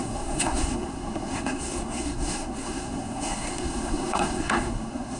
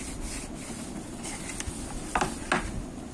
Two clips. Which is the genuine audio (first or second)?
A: second